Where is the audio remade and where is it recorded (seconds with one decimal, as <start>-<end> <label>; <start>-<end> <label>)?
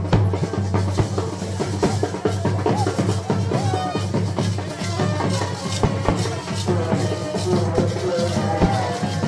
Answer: 0.0-9.3 recorded